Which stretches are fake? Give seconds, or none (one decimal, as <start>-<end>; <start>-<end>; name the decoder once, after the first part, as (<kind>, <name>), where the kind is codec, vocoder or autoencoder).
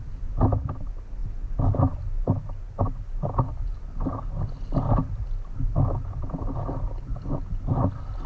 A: none